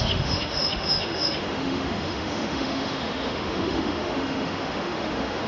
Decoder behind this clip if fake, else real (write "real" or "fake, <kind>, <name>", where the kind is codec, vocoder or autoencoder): fake, autoencoder, DAC-VAE